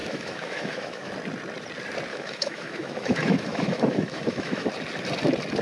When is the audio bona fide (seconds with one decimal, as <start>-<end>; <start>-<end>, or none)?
1.1-2.1; 4.7-5.6